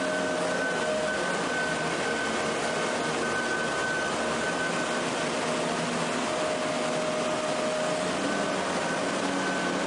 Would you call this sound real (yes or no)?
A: yes